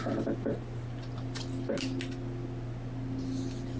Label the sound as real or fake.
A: real